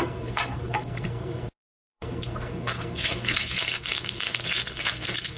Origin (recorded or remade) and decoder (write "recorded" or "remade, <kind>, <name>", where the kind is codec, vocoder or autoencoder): remade, codec, SNAC